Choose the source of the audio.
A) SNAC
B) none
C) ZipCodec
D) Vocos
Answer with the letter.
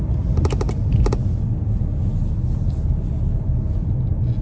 B